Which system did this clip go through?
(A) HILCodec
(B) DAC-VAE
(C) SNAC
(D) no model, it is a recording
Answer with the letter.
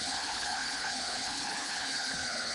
A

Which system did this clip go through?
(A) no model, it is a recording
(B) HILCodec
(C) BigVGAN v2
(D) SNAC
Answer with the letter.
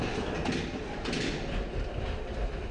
A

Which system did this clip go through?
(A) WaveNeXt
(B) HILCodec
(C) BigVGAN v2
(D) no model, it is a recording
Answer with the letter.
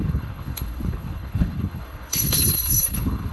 B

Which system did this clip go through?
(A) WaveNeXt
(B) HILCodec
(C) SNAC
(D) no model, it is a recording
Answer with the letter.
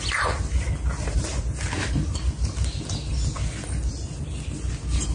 D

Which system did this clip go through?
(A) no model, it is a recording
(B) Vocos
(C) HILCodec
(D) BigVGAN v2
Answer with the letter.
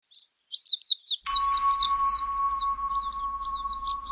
A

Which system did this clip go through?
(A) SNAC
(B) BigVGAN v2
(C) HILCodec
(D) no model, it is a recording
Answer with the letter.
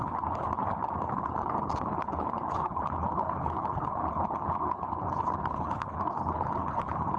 C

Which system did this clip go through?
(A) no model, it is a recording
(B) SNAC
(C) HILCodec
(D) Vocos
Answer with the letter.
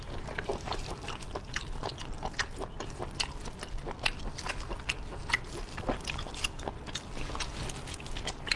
A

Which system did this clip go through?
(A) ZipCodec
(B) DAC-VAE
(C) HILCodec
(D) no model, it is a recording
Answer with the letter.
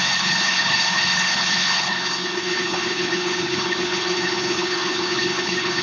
C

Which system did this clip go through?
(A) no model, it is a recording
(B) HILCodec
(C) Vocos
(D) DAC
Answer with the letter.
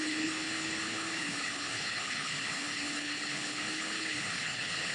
B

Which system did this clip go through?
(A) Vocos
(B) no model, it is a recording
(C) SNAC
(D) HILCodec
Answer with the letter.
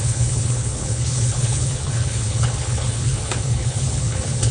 D